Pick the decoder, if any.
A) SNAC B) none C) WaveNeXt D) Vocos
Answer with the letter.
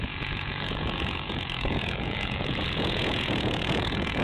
D